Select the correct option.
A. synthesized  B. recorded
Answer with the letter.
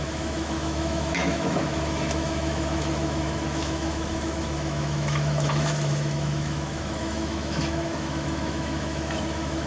A